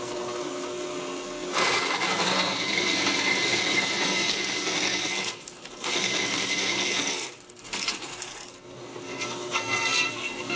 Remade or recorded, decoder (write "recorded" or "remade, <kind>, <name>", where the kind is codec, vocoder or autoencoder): remade, codec, SNAC